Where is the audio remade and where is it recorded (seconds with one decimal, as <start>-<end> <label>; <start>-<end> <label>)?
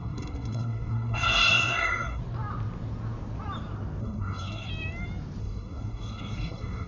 0.0-2.2 remade; 2.2-4.0 recorded; 4.0-4.7 remade; 4.7-5.4 recorded; 5.4-6.9 remade